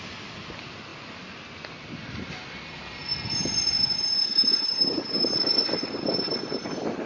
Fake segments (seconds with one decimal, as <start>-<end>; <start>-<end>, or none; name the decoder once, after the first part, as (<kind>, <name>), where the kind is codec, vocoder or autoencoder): none